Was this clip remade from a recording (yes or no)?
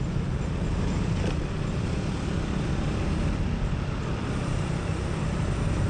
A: yes